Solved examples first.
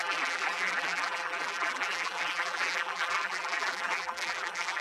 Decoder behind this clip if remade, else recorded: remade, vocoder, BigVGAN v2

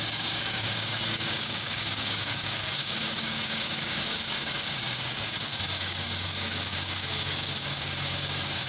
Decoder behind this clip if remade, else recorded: remade, codec, DAC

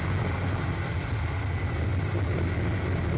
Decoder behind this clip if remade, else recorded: recorded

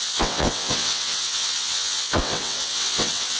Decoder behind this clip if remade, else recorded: remade, vocoder, WaveNeXt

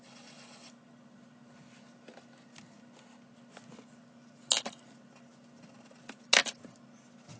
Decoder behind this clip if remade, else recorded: recorded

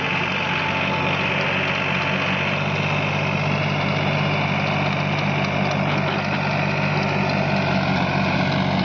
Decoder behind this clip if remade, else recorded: recorded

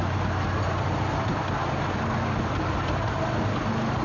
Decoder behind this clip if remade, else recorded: recorded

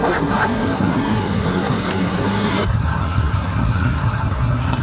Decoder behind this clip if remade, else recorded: remade, codec, SNAC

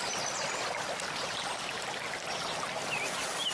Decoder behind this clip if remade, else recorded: recorded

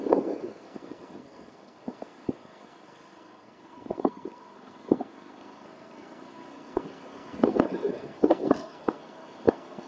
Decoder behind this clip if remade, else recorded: remade, codec, SNAC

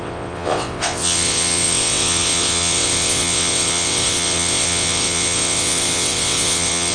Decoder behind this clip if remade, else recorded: remade, vocoder, WaveNeXt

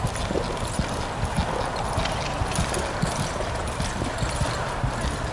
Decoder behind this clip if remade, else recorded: recorded